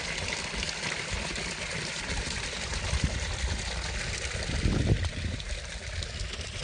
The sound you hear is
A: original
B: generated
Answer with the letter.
A